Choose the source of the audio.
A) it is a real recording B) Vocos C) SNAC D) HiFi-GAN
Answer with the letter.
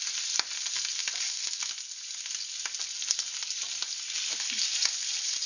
A